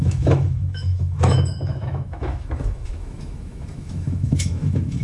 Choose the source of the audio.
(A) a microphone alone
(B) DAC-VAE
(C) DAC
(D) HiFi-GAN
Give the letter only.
B